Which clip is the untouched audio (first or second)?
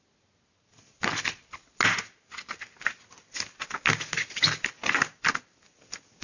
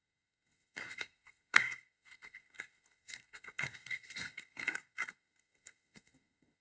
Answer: first